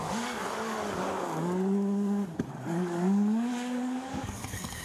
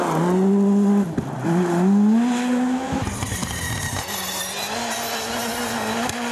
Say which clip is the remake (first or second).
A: first